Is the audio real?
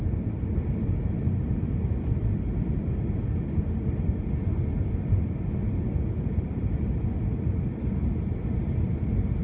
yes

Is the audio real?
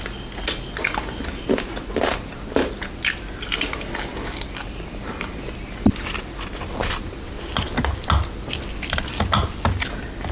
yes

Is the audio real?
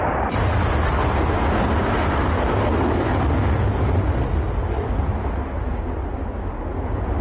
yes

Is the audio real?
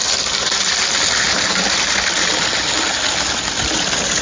yes